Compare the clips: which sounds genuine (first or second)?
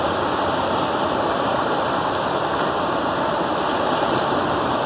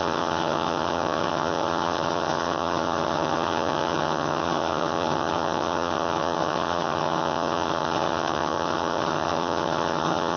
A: first